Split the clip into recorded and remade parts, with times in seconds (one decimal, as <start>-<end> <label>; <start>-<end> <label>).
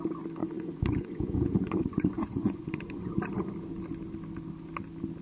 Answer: 0.0-0.4 recorded; 0.4-3.1 remade; 3.1-5.2 recorded